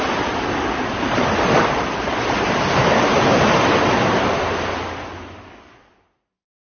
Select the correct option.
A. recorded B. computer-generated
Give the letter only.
A